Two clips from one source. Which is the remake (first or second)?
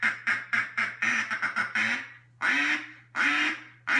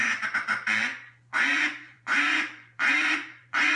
second